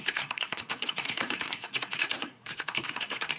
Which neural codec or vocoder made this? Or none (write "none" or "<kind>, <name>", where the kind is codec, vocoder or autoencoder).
codec, SNAC